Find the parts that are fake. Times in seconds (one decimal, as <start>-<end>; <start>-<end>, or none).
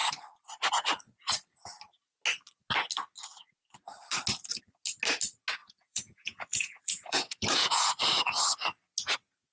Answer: 5.6-7.9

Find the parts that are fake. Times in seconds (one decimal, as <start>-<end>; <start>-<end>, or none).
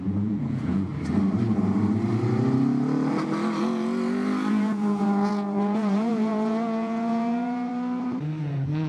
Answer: 0.0-0.9; 4.5-7.7; 8.4-8.9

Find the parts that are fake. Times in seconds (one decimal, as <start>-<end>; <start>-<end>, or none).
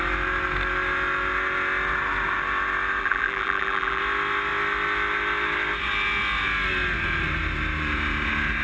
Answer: 3.0-4.0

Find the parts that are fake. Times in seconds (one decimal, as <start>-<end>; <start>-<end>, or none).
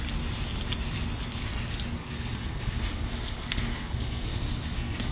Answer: 2.0-5.1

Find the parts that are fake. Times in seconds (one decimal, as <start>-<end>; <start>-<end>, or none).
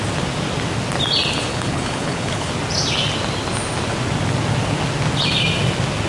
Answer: 1.5-2.5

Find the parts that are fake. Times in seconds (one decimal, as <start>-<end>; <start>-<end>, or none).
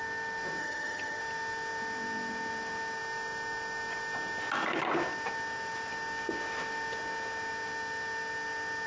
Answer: 0.6-1.2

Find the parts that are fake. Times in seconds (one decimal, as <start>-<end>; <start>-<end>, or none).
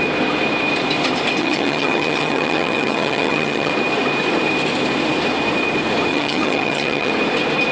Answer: 1.4-3.7; 6.1-7.1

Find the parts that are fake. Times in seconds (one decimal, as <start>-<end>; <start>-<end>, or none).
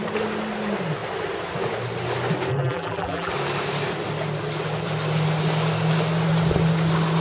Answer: 2.5-3.3